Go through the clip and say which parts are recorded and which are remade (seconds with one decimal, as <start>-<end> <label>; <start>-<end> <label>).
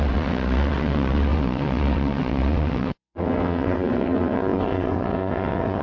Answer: 0.0-5.8 remade